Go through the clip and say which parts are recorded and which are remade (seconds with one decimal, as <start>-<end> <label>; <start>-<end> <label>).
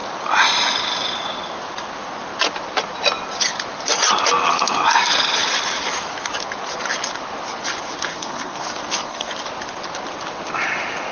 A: 0.0-8.1 recorded; 8.1-9.3 remade; 9.3-11.1 recorded